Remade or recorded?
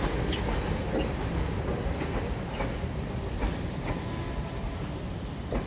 recorded